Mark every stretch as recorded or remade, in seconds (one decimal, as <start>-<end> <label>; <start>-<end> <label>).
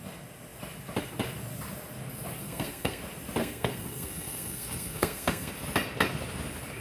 0.0-2.4 recorded; 2.4-3.0 remade; 3.0-3.4 recorded; 3.4-5.5 remade; 5.5-6.8 recorded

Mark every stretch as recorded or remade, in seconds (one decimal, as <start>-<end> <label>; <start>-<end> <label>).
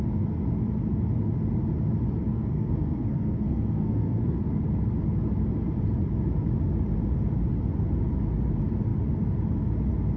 0.0-2.3 recorded; 2.3-4.4 remade; 4.4-10.2 recorded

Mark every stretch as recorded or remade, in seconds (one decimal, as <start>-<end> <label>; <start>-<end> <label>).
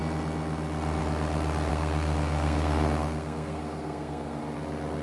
0.0-1.7 recorded; 1.7-4.4 remade; 4.4-5.0 recorded